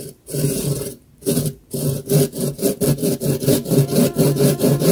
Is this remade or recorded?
recorded